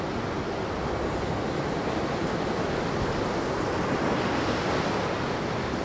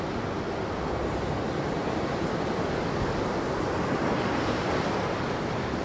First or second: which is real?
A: first